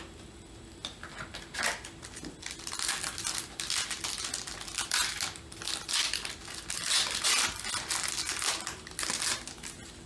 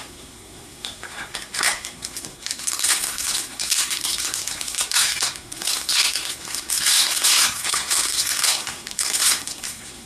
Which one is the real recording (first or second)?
first